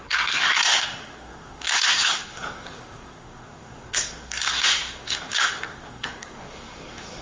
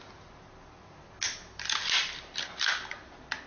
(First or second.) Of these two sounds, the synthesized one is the first